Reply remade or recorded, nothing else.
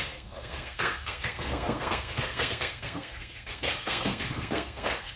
remade